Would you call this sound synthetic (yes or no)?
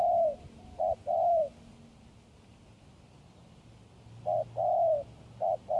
no